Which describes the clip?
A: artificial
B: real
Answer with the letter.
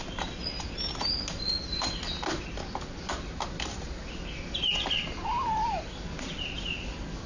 B